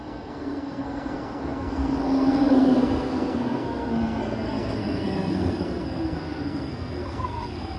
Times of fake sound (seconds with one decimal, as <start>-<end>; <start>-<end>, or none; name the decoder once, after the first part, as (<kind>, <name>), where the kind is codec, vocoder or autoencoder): 0.0-7.8 (codec, SNAC)